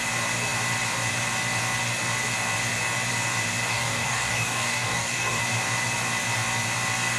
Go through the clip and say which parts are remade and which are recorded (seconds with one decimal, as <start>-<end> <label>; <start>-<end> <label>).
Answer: 0.0-3.7 recorded; 3.7-5.4 remade; 5.4-7.2 recorded